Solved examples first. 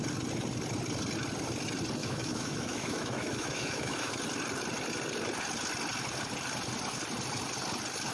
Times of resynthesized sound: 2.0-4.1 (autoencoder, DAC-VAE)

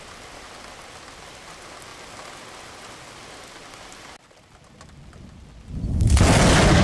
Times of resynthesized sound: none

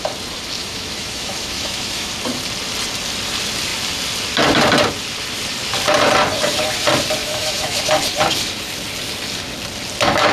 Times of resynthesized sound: 0.6-2.1 (autoencoder, DAC-VAE); 7.2-7.8